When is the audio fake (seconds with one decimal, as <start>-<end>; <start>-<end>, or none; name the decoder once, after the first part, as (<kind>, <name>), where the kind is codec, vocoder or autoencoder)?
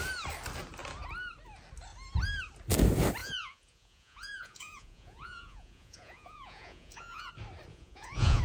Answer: 3.2-7.3 (vocoder, Vocos); 7.7-8.4